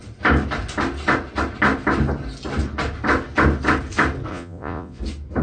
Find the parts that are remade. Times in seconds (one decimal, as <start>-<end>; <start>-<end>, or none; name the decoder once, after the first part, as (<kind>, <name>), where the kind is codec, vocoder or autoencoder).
4.3-5.0 (vocoder, Vocos)